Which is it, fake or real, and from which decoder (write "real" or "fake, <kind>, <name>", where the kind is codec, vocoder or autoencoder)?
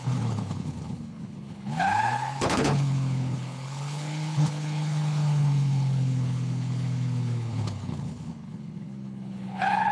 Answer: fake, codec, HILCodec